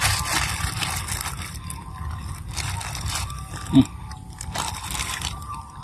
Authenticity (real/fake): fake